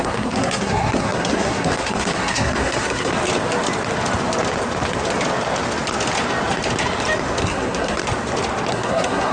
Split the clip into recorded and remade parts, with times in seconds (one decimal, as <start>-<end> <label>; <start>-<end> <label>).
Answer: 0.0-3.1 remade; 3.1-7.4 recorded; 7.4-8.0 remade; 8.0-8.7 recorded; 8.7-9.3 remade